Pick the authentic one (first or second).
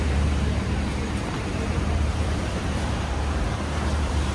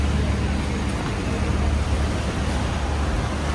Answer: second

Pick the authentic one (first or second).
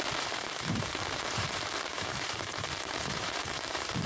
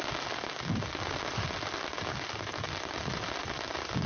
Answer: second